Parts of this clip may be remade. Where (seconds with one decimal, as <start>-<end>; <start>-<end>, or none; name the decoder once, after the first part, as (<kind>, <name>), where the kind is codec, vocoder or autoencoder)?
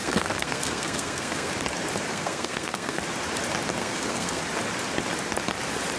0.0-1.5 (codec, SNAC); 2.1-3.0; 3.8-4.4